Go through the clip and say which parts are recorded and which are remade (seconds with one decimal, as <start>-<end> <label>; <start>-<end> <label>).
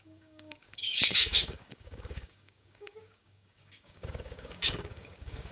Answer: 0.0-5.5 remade